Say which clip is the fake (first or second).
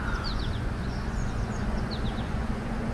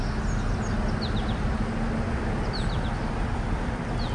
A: first